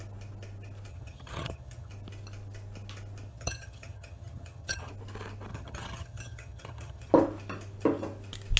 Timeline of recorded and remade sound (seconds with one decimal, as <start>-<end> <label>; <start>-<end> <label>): 0.0-0.9 recorded; 0.9-1.9 remade; 1.9-3.3 recorded; 3.3-4.9 remade; 4.9-5.5 recorded; 5.5-7.1 remade; 7.1-8.6 recorded